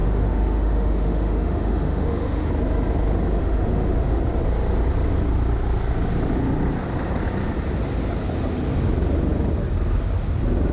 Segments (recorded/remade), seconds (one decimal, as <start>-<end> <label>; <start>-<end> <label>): 0.0-2.5 remade; 2.5-3.4 recorded; 3.4-4.2 remade; 4.2-10.7 recorded